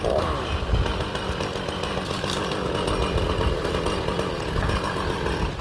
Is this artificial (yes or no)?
no